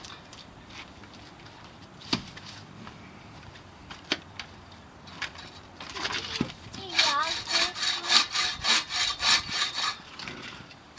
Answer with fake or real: fake